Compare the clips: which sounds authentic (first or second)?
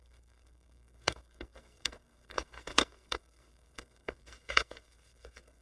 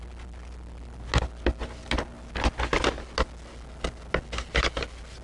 second